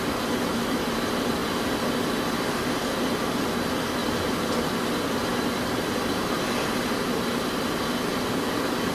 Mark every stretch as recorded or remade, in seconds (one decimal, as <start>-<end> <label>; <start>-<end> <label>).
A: 0.0-4.0 remade; 4.0-4.6 recorded; 4.6-8.9 remade